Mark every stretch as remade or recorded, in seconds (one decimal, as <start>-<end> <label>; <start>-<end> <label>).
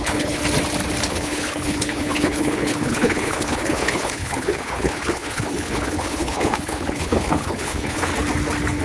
0.0-0.4 remade; 0.4-1.1 recorded; 1.1-8.1 remade; 8.1-8.8 recorded